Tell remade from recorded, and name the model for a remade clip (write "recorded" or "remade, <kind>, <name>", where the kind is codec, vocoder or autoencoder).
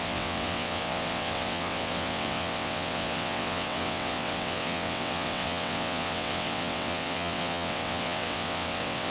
remade, vocoder, WaveNeXt